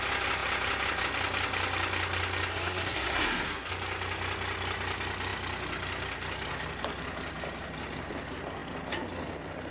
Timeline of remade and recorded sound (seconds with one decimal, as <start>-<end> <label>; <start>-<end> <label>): 0.0-2.5 recorded; 2.5-3.7 remade; 3.7-9.7 recorded